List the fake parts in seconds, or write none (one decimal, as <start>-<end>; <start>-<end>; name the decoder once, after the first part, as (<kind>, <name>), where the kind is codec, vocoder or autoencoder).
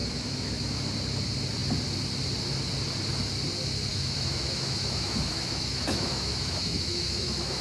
0.0-0.8 (autoencoder, DAC-VAE); 3.9-7.6